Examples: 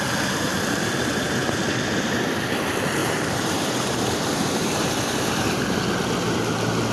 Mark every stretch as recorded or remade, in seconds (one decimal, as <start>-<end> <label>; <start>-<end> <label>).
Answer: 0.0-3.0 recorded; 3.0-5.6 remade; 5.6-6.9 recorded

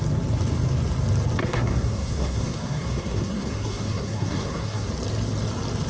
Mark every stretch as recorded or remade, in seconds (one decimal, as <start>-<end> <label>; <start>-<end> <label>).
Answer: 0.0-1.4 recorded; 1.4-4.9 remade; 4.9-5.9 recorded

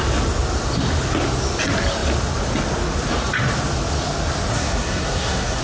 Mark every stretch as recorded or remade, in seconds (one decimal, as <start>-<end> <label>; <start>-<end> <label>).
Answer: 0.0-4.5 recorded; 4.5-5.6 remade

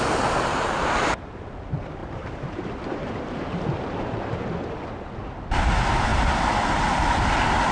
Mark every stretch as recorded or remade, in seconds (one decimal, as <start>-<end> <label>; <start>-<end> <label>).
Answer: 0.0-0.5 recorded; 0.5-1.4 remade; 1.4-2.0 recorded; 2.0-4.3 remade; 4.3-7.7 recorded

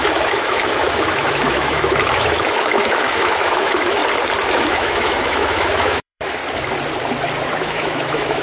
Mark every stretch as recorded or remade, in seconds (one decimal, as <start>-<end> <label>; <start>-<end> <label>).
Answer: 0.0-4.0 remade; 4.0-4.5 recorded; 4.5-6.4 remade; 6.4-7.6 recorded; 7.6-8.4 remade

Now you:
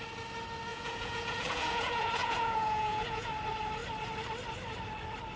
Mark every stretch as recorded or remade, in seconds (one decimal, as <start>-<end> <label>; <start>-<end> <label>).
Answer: 0.0-0.7 recorded; 0.7-3.3 remade; 3.3-5.4 recorded